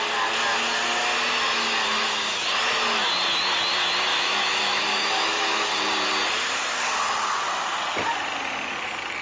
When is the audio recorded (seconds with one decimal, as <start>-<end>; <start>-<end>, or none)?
0.0-4.1; 5.9-9.2